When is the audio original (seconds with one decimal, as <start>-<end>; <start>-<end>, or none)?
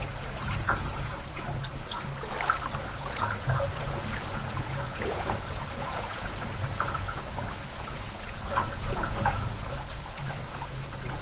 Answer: 2.1-2.9